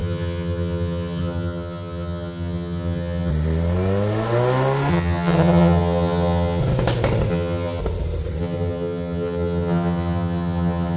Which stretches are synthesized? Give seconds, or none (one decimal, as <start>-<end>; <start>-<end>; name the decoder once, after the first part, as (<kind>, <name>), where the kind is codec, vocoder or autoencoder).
0.0-3.3 (vocoder, HiFi-GAN); 4.9-6.6; 7.3-7.8; 8.4-11.0